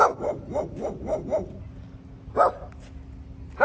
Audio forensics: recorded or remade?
recorded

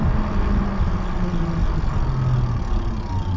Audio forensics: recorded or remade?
recorded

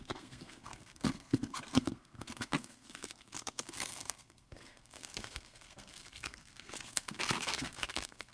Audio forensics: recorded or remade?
remade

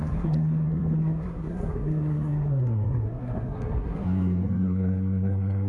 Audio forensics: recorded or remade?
remade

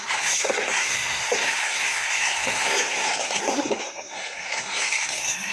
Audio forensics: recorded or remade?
remade